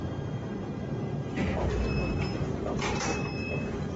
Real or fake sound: fake